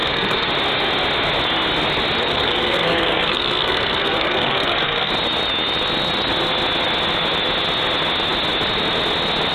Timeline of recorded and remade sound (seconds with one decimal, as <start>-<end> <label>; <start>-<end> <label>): 0.0-0.5 remade; 0.5-2.2 recorded; 2.2-5.1 remade; 5.1-9.5 recorded